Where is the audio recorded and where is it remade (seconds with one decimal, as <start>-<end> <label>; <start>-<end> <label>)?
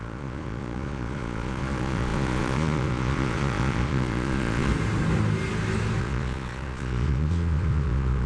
0.0-4.7 remade; 4.7-6.0 recorded; 6.0-8.3 remade